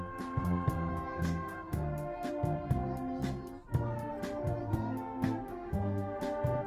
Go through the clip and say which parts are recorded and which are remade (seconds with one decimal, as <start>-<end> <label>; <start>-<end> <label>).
0.0-0.9 recorded; 0.9-2.3 remade; 2.3-4.6 recorded; 4.6-6.2 remade; 6.2-6.7 recorded